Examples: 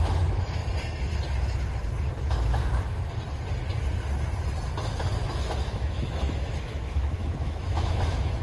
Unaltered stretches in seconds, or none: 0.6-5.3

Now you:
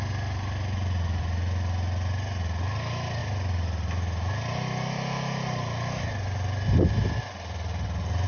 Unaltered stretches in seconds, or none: 0.0-8.3

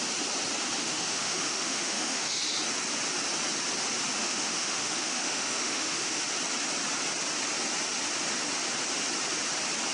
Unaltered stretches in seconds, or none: 0.0-0.8; 2.4-4.2; 6.2-9.9

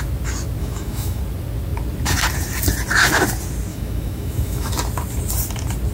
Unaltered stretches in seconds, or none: 0.0-0.6; 1.2-3.7; 4.7-5.9

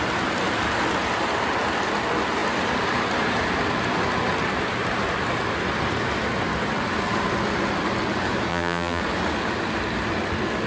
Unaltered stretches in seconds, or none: 0.0-8.5; 9.0-10.7